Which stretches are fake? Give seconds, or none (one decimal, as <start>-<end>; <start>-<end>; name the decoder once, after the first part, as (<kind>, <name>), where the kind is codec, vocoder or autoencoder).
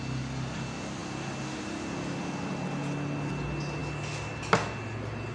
none